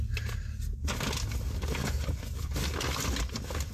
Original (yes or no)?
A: yes